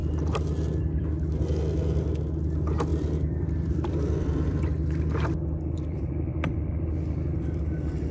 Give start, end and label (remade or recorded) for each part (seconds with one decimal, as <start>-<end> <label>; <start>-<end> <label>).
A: 0.0-0.7 remade; 0.7-2.9 recorded; 2.9-4.7 remade; 4.7-5.5 recorded; 5.5-6.7 remade; 6.7-8.1 recorded